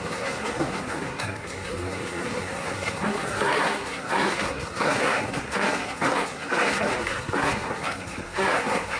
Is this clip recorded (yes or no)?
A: no